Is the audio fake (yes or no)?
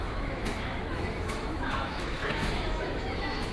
yes